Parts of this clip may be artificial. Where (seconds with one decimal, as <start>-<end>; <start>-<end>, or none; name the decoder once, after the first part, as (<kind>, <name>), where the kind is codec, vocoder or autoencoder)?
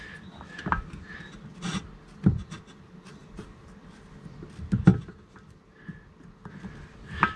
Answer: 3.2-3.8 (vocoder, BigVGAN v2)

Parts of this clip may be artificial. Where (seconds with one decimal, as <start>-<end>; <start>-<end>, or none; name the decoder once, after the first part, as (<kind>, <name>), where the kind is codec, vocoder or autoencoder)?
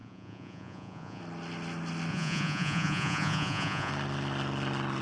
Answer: 0.0-1.2 (vocoder, Vocos); 2.1-3.9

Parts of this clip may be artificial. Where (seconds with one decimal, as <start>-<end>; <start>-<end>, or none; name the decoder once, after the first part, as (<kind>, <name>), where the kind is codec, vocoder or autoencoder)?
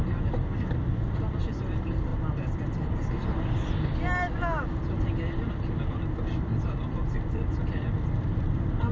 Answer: none